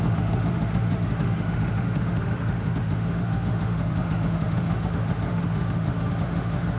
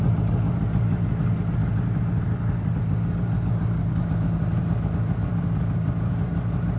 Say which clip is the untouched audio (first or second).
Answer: second